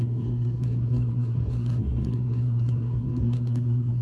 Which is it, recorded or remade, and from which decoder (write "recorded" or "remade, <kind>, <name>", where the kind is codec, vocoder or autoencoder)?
remade, codec, SNAC